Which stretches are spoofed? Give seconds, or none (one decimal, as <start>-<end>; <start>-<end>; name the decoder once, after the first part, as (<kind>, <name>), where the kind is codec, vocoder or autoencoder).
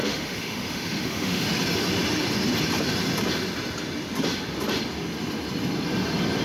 0.0-1.5 (autoencoder, DAC-VAE)